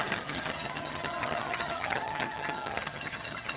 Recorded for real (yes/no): no